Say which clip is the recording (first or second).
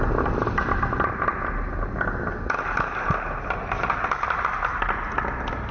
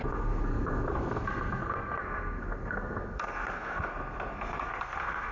first